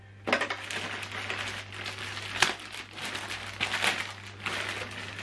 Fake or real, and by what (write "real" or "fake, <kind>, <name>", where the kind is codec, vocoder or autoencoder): real